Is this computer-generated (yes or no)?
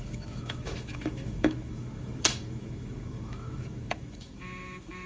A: yes